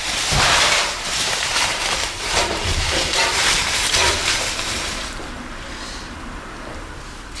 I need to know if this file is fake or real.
fake